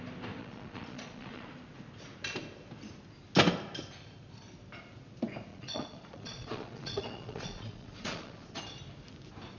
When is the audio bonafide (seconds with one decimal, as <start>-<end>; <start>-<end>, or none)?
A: 0.0-0.4; 1.5-5.5; 8.6-9.6